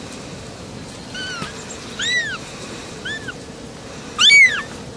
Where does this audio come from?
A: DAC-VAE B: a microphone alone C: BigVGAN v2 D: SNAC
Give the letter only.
B